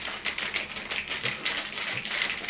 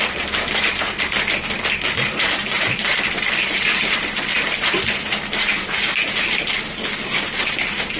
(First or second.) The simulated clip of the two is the second